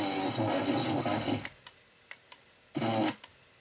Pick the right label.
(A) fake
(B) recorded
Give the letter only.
B